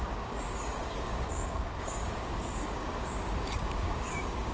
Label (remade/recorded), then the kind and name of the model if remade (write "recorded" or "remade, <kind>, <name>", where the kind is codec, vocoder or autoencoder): remade, codec, DAC